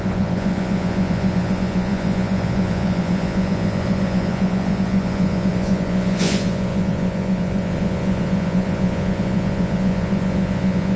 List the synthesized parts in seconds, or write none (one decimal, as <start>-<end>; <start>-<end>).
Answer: 0.0-11.0